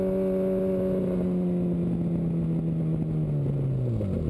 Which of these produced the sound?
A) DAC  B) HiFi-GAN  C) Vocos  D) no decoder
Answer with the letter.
D